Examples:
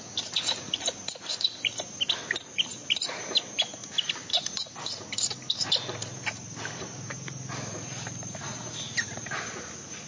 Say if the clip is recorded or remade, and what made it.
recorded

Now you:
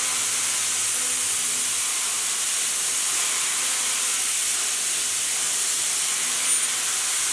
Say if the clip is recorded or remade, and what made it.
recorded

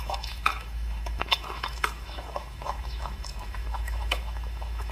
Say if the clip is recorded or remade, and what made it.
remade, autoencoder, DAC-VAE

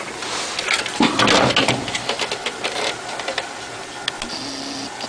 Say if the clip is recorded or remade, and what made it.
recorded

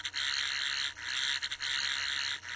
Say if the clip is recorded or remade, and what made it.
recorded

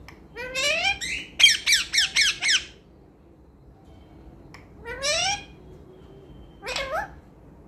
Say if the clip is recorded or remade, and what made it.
recorded